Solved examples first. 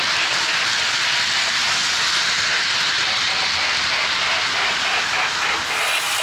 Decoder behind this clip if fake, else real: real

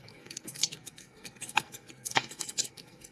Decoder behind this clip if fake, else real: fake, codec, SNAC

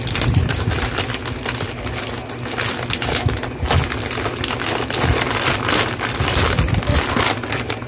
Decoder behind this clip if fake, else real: real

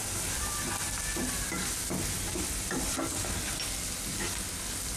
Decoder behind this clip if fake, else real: real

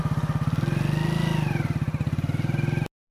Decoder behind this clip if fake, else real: real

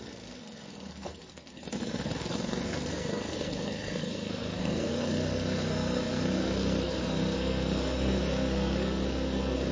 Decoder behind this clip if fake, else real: fake, codec, SNAC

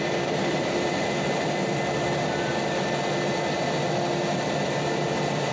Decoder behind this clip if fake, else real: real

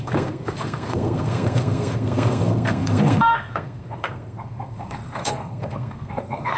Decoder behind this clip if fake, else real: fake, codec, SNAC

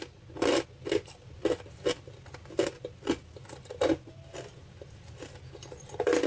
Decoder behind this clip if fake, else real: real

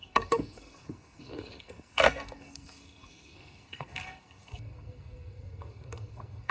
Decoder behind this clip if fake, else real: fake, codec, SNAC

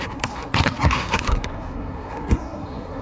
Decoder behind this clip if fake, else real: fake, codec, SNAC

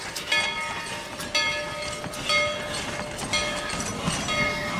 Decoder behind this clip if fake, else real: real